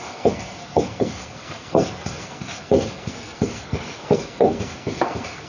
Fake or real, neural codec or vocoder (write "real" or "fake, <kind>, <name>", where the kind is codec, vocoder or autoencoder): fake, codec, SNAC